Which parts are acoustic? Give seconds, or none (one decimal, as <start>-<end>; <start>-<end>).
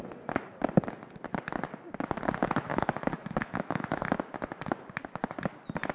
0.0-2.7; 4.3-5.9